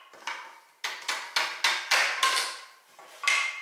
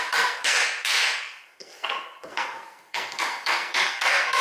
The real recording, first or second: first